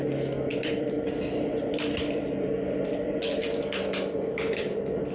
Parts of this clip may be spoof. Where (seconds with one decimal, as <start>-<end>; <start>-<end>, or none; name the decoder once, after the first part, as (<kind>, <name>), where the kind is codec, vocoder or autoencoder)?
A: 0.5-3.2 (vocoder, BigVGAN v2)